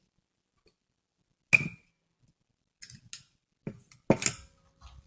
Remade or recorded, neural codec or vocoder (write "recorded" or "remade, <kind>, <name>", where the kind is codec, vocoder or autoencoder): recorded